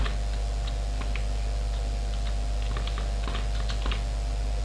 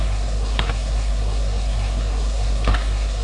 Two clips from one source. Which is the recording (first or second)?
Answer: first